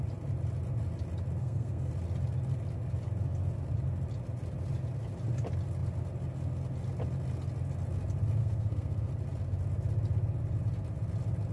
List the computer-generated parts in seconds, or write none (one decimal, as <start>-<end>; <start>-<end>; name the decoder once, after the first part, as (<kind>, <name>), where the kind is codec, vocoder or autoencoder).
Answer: 1.4-1.9 (codec, SNAC); 8.4-9.1